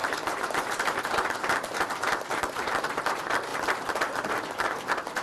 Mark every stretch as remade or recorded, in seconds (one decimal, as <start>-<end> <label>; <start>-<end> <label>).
0.0-3.1 remade; 3.1-5.2 recorded